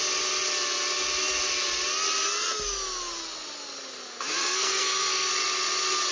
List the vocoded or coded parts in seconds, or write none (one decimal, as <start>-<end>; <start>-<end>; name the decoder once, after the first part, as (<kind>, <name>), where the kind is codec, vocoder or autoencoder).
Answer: 4.4-5.3 (codec, SNAC)